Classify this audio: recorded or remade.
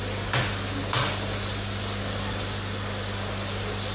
recorded